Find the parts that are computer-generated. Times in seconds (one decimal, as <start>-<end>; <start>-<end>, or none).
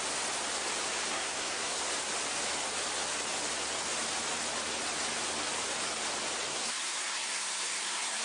1.1-1.8; 6.5-8.2